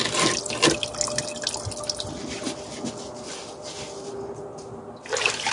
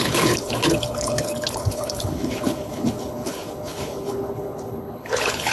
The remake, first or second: second